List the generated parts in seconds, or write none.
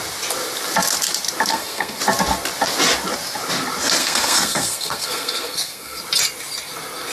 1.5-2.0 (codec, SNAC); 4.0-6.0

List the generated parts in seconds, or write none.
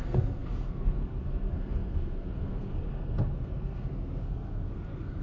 0.0-5.2 (codec, SNAC)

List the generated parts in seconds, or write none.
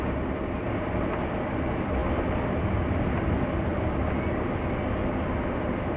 none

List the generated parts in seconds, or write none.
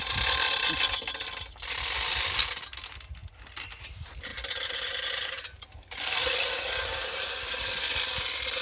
none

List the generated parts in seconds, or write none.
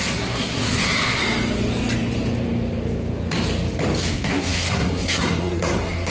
0.0-1.2 (codec, SNAC); 4.1-6.1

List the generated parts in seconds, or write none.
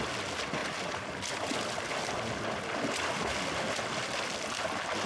none